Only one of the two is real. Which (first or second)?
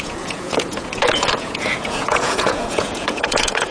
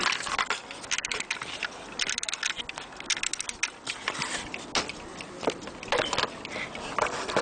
second